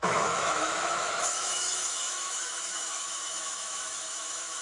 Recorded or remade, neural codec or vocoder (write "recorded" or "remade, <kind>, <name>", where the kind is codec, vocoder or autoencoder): remade, autoencoder, DAC-VAE